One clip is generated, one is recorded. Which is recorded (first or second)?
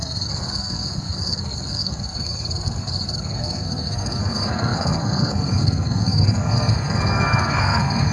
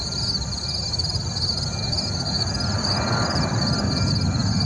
second